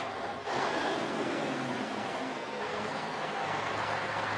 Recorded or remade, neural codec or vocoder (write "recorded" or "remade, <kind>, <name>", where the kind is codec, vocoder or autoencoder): remade, codec, SNAC